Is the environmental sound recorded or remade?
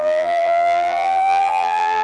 remade